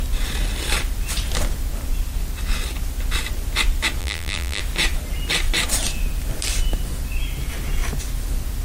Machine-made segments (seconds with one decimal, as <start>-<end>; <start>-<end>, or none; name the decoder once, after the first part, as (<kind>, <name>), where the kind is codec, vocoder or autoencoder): 4.0-4.6 (vocoder, BigVGAN v2)

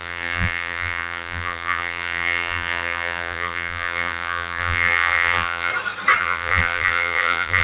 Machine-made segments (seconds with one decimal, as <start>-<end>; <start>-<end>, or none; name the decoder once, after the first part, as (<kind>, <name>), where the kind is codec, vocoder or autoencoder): 0.0-5.7 (vocoder, BigVGAN v2); 6.2-7.6

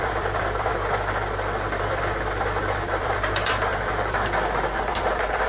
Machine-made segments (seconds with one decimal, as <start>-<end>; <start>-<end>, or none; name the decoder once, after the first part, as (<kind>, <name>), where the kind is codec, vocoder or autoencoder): 0.0-0.7 (vocoder, BigVGAN v2); 1.9-5.5

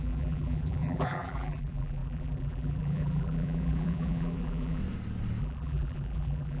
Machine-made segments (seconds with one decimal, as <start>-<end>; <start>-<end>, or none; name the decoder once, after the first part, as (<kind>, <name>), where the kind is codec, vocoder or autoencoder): 0.0-4.8 (vocoder, BigVGAN v2); 5.4-6.6

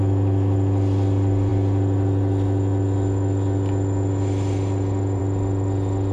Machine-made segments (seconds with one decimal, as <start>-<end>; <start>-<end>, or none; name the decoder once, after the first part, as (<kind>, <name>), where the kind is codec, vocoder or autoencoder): none

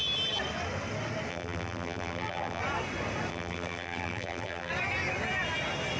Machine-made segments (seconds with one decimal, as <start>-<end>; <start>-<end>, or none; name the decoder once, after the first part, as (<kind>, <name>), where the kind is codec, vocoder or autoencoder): 1.3-2.6 (vocoder, BigVGAN v2); 3.3-4.7

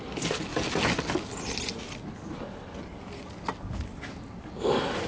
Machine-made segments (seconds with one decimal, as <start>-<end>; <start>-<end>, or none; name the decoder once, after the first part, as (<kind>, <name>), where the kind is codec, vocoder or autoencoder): none